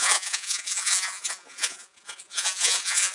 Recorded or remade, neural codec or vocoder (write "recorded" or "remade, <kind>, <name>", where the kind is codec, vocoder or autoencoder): remade, vocoder, Vocos